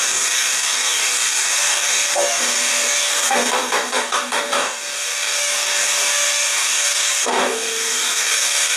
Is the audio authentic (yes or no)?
no